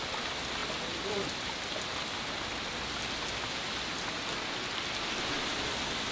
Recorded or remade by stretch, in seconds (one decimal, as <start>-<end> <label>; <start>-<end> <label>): 0.0-6.1 recorded

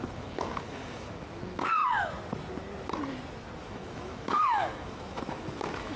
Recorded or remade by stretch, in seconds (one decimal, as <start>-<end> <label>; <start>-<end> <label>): 0.0-1.8 remade; 1.8-3.6 recorded; 3.6-6.0 remade

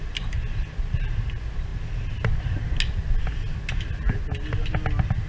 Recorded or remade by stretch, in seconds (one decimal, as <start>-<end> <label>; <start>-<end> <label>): 0.0-5.3 recorded

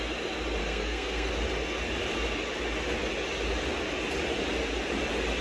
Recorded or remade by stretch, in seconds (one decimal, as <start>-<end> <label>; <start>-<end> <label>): 0.0-0.6 recorded; 0.6-1.3 remade; 1.3-5.4 recorded

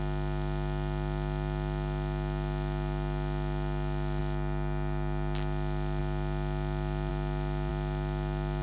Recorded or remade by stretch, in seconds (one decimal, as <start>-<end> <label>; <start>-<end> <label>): 0.0-8.6 recorded